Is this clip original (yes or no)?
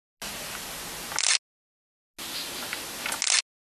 yes